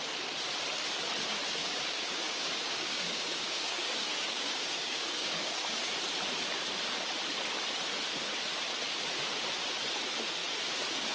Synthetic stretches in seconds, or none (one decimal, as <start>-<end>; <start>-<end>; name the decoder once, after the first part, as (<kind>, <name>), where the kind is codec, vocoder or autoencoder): 1.6-5.9 (codec, DAC)